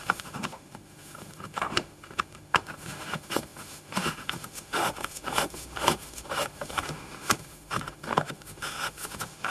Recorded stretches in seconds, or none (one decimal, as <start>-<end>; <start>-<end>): none

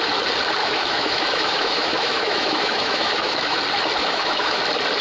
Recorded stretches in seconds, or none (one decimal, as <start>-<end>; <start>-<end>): 0.0-0.6; 3.6-4.0; 4.6-5.0

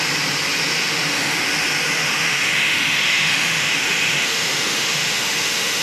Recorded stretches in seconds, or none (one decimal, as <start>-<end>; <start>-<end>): 0.0-0.8; 1.5-2.0

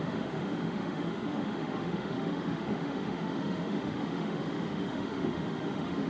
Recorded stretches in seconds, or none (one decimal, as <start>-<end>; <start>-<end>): none

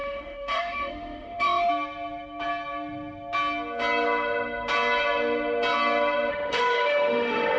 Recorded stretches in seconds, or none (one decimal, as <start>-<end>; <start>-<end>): 1.7-6.3

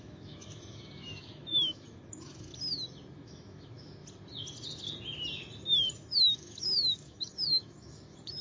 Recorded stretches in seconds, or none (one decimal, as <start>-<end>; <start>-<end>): 2.5-3.1; 4.0-5.9